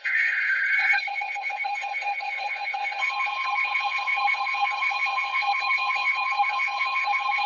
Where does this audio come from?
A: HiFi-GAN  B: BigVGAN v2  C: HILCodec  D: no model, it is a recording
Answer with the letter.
C